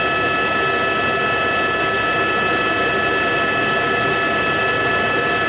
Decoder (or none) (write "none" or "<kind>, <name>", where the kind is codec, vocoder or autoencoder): none